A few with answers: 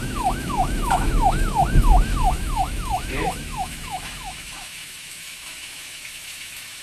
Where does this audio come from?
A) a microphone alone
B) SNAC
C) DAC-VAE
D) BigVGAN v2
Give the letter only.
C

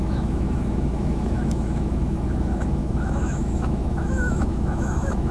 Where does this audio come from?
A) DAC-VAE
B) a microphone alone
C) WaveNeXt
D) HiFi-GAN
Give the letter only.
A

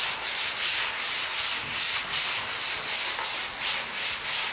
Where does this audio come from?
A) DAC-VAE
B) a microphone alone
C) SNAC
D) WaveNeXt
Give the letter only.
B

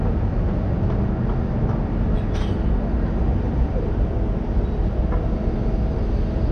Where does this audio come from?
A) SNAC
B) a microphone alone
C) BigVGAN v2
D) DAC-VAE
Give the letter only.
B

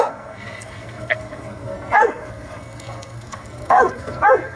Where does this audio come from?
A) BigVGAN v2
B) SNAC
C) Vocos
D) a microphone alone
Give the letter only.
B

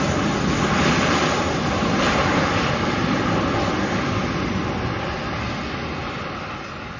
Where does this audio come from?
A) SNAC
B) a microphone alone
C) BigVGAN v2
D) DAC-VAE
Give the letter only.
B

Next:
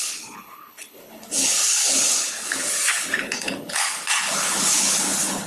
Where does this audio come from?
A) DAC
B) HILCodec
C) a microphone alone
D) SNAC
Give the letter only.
B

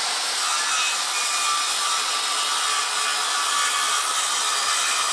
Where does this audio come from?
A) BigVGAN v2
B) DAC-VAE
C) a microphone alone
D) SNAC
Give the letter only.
C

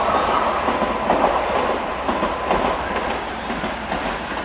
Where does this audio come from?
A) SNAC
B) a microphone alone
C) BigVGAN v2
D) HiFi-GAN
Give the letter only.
B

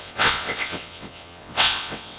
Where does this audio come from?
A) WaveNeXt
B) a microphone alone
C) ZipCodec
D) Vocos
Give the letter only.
A